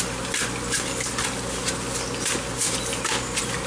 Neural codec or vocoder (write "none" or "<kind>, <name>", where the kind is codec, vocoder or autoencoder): none